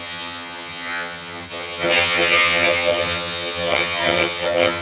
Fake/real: fake